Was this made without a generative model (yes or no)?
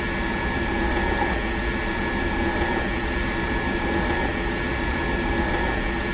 yes